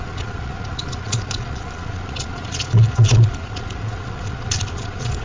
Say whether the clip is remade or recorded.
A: remade